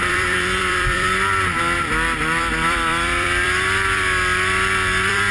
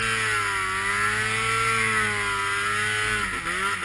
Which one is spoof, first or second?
first